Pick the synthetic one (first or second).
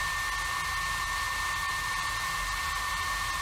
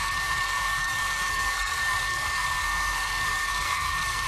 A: second